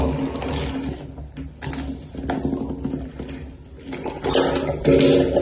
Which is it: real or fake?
real